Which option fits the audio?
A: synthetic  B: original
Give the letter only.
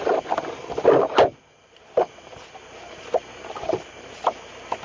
B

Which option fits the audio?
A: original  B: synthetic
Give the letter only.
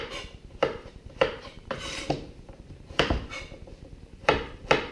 B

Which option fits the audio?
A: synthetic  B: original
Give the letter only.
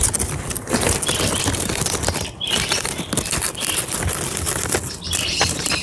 B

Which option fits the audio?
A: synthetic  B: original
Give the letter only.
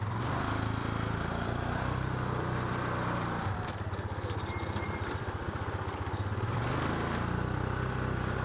A